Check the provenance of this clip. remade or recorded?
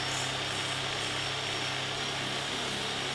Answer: recorded